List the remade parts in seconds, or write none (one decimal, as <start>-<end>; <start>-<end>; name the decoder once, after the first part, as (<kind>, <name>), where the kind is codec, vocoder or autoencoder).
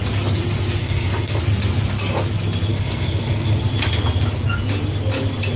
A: 0.8-1.4 (codec, SNAC); 2.7-3.6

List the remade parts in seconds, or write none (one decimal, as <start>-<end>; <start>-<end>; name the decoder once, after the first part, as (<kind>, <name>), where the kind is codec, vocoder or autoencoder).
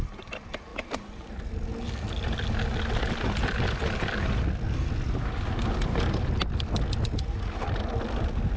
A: none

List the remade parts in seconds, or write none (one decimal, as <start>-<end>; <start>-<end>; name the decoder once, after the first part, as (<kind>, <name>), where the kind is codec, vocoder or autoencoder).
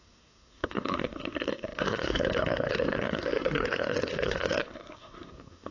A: 0.0-5.7 (codec, SNAC)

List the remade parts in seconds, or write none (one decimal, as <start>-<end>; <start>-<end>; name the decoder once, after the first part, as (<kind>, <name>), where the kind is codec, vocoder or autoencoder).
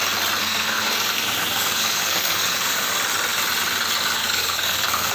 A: 0.4-2.9 (codec, SNAC); 4.2-5.1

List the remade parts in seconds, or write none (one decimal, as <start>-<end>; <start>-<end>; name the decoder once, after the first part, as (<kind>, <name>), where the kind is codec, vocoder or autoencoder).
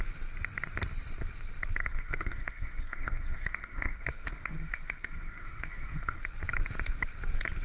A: 1.8-6.2 (codec, SNAC)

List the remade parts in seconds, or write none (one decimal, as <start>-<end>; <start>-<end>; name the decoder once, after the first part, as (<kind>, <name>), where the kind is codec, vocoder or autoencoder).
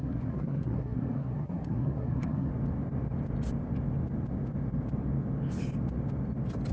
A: 0.0-2.5 (codec, SNAC)